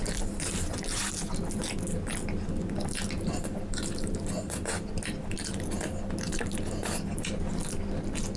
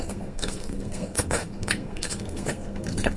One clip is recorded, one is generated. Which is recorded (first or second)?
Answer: first